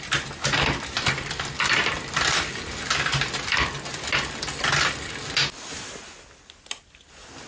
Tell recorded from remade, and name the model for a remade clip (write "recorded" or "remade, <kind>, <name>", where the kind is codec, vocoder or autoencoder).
recorded